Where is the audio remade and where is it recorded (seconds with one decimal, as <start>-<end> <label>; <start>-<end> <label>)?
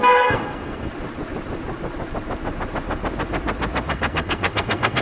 0.0-0.9 remade; 0.9-3.9 recorded; 3.9-5.0 remade